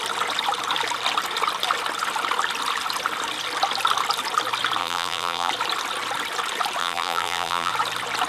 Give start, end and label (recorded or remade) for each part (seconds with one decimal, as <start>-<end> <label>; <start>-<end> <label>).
0.0-4.8 recorded; 4.8-5.5 remade; 5.5-6.8 recorded; 6.8-7.7 remade; 7.7-8.3 recorded